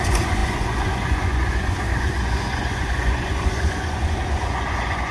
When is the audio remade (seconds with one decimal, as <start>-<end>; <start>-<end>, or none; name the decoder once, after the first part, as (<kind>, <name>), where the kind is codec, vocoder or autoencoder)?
0.0-5.1 (vocoder, Vocos)